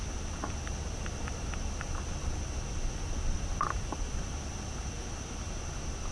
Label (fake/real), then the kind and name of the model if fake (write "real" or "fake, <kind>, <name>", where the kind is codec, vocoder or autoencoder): real